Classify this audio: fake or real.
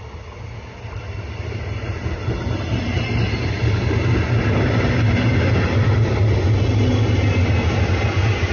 real